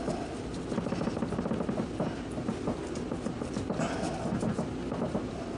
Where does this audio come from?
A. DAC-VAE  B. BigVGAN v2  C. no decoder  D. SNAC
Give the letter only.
C